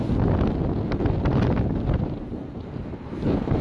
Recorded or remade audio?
recorded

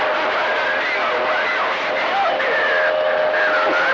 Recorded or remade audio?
recorded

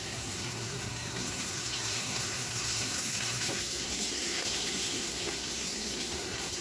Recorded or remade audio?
remade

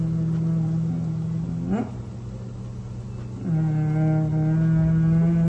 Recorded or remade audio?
recorded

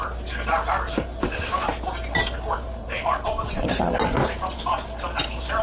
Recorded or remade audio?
recorded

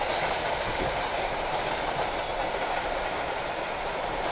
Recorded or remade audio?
remade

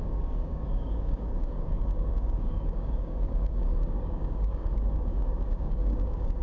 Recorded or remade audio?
remade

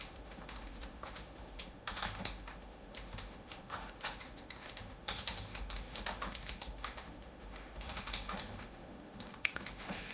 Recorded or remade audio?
remade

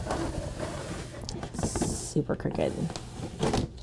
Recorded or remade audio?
recorded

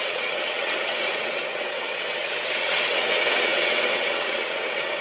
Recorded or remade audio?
remade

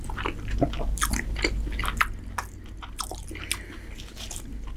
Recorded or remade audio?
recorded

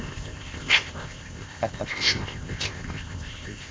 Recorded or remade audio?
remade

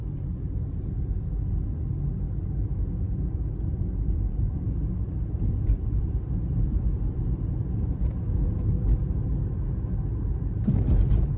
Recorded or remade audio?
recorded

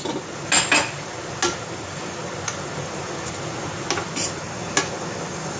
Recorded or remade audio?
recorded